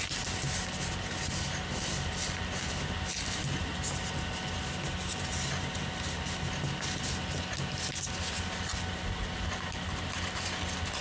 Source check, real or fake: real